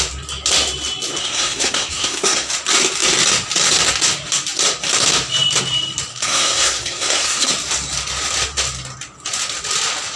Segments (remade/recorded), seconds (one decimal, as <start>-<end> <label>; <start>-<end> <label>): 0.0-1.2 recorded; 1.2-2.5 remade; 2.5-6.1 recorded; 6.1-7.5 remade; 7.5-10.2 recorded